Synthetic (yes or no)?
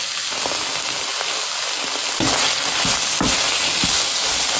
no